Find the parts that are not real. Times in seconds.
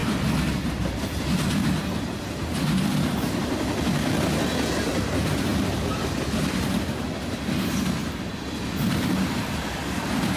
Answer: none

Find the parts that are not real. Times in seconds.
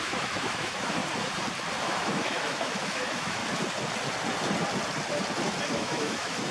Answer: 0.0-1.0; 1.8-3.4; 5.7-6.5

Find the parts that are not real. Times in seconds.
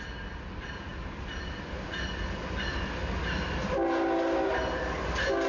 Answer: 0.9-1.7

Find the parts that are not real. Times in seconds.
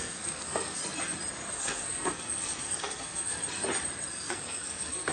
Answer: 0.0-0.8; 1.5-3.4; 4.1-5.1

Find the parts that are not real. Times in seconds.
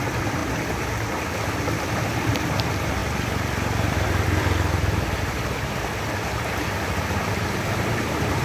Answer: 0.0-3.0; 7.6-8.4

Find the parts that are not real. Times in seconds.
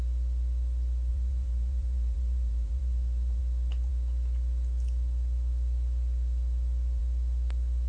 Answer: 1.1-3.4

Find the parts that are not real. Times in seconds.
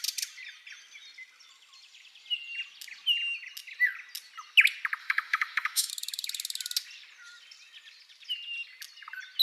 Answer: 5.0-5.9